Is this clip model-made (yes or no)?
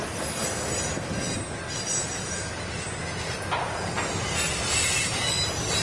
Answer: no